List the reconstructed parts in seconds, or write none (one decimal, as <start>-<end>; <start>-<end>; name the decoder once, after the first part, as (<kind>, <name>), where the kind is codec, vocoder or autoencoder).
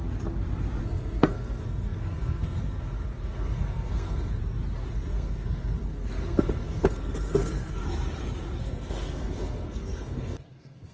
0.8-4.4 (codec, SNAC); 4.9-7.8; 8.6-10.9